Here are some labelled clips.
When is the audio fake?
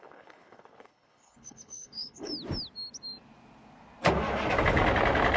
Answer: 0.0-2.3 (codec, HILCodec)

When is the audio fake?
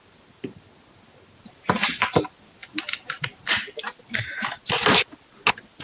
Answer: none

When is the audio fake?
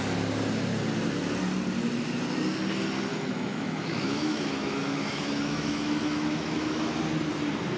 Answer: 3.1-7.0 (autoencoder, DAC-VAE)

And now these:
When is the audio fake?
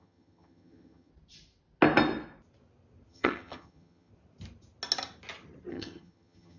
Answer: 0.0-1.1 (vocoder, HiFi-GAN); 3.1-4.1; 5.7-6.6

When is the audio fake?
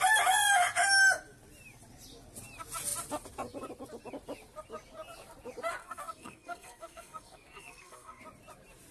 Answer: 5.8-8.2 (codec, SNAC)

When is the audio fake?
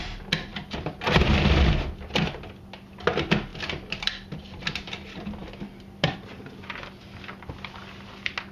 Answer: 0.5-1.7 (vocoder, BigVGAN v2); 3.5-4.7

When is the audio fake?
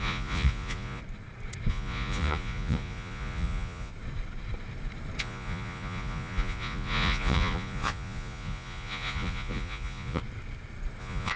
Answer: 0.0-1.0 (vocoder, Vocos); 1.7-3.9; 5.2-10.2; 11.0-11.4